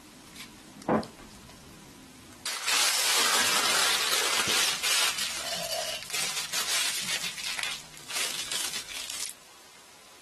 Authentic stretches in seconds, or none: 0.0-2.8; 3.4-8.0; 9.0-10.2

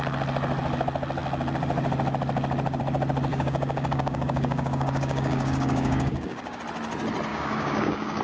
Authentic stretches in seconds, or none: 0.0-3.3; 6.6-7.3

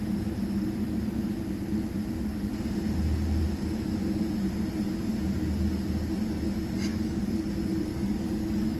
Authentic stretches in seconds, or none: 0.0-6.9; 7.5-7.9

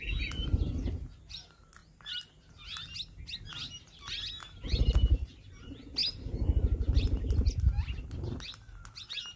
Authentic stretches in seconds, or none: 0.0-9.4

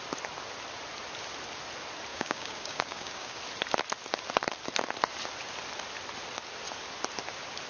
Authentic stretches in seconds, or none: 0.0-2.1; 3.4-7.7

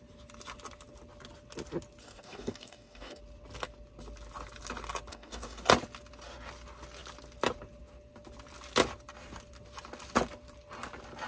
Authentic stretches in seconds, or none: 0.0-2.0; 3.2-5.1; 5.6-11.3